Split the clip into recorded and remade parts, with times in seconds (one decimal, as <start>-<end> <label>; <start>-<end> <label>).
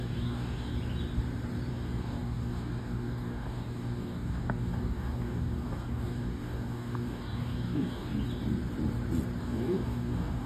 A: 0.0-0.7 remade; 0.7-1.7 recorded; 1.7-8.1 remade; 8.1-9.4 recorded; 9.4-10.5 remade